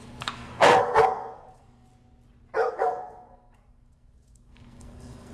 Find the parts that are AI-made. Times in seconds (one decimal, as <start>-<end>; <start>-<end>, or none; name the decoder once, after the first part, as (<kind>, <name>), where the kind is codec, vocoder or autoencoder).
0.0-1.9 (codec, SNAC); 2.7-5.3